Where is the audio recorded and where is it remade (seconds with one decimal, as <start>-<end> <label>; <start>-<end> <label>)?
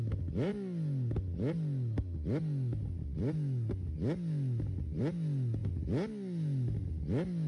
0.0-7.5 recorded